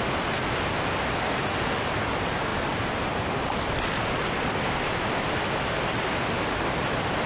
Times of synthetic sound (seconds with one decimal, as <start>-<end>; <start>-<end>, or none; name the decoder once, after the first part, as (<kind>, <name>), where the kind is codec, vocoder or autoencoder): none